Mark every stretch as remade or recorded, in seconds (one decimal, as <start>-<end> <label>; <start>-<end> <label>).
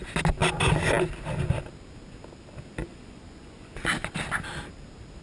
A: 0.0-2.8 recorded; 2.8-3.9 remade; 3.9-5.2 recorded